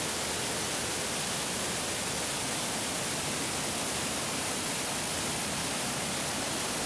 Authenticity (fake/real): real